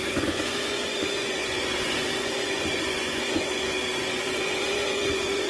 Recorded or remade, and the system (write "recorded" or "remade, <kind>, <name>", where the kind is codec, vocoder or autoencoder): remade, vocoder, Vocos